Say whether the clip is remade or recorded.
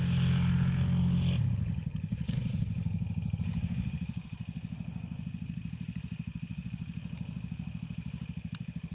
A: recorded